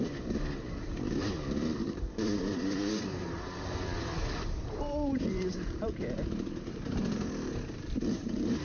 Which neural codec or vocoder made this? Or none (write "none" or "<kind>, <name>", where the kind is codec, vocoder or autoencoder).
vocoder, BigVGAN v2